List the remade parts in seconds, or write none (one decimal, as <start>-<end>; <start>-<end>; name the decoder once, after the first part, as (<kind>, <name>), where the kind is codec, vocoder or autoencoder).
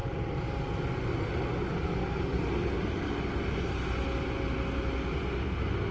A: none